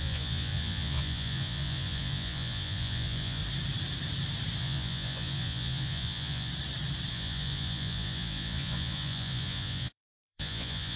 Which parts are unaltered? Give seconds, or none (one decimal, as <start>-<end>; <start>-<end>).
3.4-4.6; 6.5-7.1